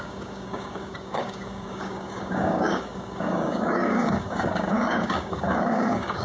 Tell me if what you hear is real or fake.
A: fake